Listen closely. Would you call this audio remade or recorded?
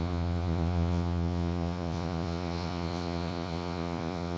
remade